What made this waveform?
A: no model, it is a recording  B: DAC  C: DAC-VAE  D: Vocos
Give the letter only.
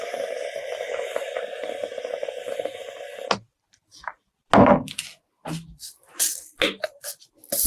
A